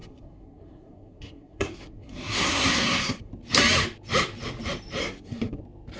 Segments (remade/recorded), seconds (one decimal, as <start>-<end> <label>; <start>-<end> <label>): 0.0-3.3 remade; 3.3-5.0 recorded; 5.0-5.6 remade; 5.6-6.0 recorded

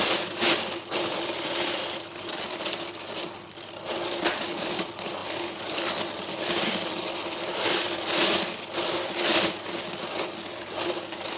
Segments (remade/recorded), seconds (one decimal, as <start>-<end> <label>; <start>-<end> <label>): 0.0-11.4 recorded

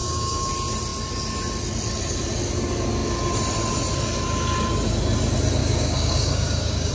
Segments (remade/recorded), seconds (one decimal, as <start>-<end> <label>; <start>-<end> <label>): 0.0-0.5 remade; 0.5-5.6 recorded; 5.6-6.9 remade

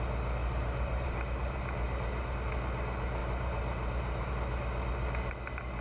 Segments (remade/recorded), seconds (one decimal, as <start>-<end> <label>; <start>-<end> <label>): 0.0-0.4 recorded; 0.4-2.3 remade; 2.3-3.2 recorded; 3.2-4.3 remade; 4.3-5.8 recorded

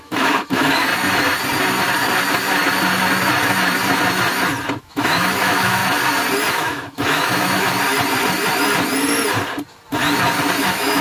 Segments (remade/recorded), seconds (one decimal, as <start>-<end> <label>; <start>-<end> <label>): 0.0-0.9 remade; 0.9-4.8 recorded; 4.8-5.8 remade; 5.8-6.5 recorded; 6.5-7.7 remade; 7.7-10.6 recorded; 10.6-11.0 remade

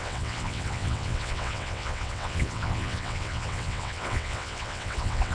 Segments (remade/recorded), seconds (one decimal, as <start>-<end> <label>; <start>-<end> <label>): 0.0-5.3 remade